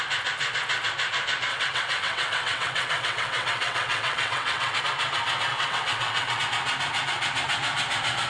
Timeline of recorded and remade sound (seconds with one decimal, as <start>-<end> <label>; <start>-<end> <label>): 0.0-1.5 recorded; 1.5-4.8 remade; 4.8-5.5 recorded; 5.5-6.4 remade; 6.4-8.3 recorded